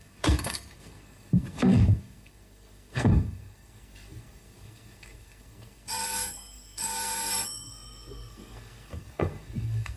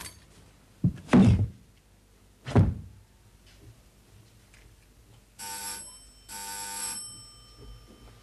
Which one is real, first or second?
second